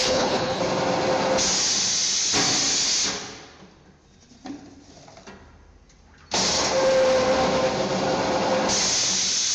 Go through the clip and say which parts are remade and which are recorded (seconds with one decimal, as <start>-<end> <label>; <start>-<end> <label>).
0.0-0.6 remade; 0.6-9.5 recorded